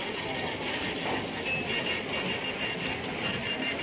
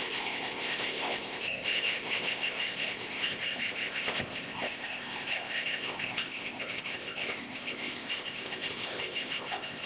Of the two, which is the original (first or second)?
first